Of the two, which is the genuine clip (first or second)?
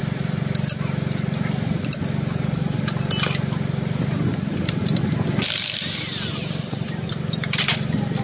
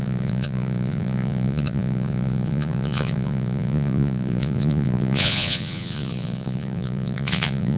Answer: first